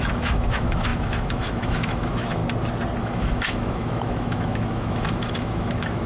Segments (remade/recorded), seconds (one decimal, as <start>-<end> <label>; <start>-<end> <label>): 0.0-2.4 remade; 2.4-3.0 recorded; 3.0-6.1 remade